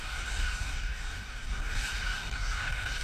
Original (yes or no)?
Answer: no